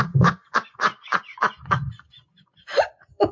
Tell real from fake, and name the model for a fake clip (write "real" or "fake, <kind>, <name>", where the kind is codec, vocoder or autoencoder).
fake, vocoder, Vocos